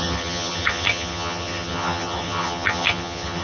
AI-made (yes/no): yes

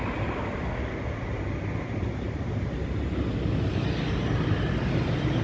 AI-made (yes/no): no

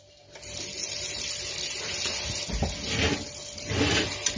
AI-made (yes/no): no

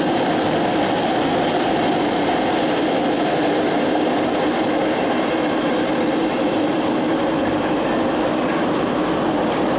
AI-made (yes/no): no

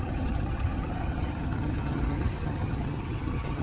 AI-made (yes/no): yes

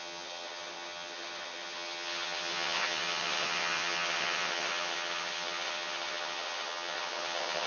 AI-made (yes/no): yes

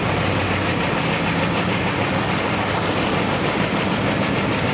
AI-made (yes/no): no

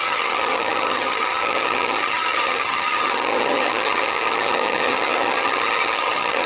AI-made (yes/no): yes